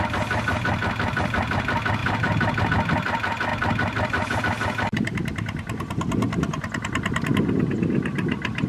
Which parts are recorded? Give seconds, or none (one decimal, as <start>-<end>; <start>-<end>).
0.0-2.0; 2.7-3.5; 4.4-8.7